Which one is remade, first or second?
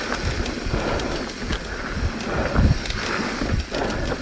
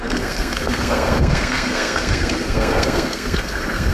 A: second